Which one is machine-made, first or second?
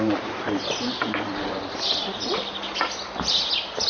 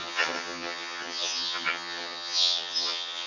second